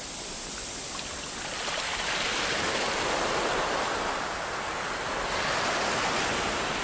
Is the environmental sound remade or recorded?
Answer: recorded